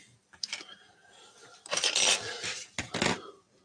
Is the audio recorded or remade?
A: recorded